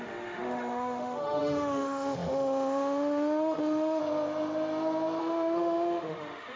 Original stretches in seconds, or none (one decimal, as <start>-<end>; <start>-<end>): 4.0-5.2